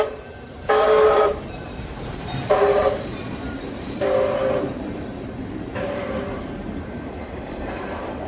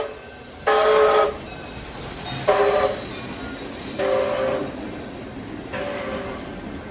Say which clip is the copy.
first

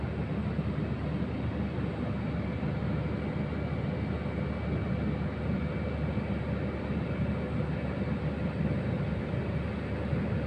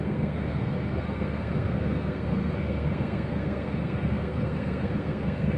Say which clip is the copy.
second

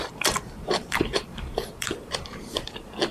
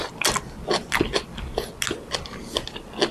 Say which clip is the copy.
first